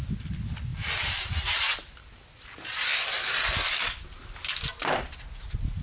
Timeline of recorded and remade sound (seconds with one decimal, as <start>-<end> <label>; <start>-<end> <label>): 0.0-5.8 recorded